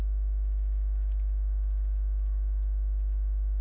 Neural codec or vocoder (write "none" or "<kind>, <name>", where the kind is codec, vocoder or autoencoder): autoencoder, DAC-VAE